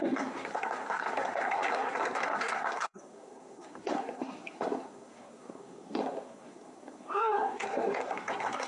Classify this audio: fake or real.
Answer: fake